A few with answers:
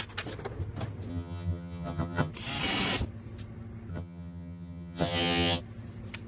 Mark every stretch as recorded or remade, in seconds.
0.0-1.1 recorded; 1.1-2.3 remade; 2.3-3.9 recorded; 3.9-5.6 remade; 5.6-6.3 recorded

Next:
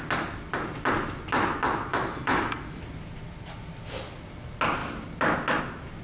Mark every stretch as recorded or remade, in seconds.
0.0-1.9 recorded; 1.9-2.8 remade; 2.8-6.0 recorded

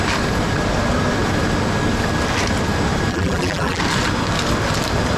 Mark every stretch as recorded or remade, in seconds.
0.0-3.1 recorded; 3.1-3.8 remade; 3.8-5.2 recorded

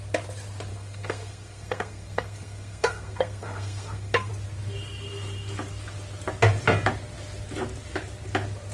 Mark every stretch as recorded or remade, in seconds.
0.0-0.7 recorded; 0.7-4.3 remade; 4.3-8.7 recorded